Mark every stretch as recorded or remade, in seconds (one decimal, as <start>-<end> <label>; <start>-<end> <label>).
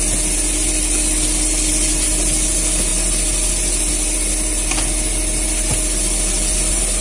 0.0-7.0 recorded